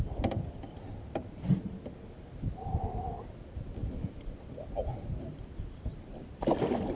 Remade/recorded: recorded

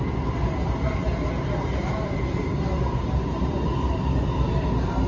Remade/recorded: recorded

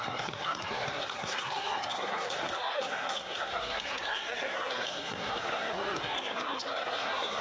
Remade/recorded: remade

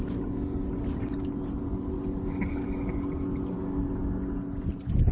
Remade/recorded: recorded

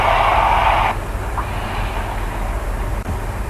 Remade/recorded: recorded